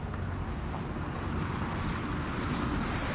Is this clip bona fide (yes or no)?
yes